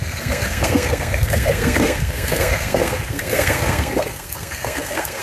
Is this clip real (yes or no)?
no